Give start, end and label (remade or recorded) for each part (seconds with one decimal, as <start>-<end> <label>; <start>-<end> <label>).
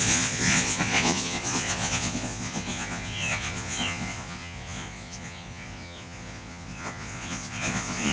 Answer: 0.0-8.1 remade